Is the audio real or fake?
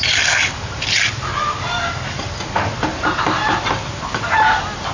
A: real